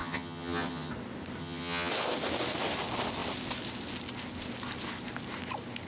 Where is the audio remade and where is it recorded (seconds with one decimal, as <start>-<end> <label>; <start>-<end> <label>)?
0.0-0.9 remade; 0.9-1.4 recorded; 1.4-1.9 remade; 1.9-5.9 recorded